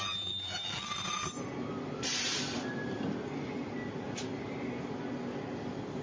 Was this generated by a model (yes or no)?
no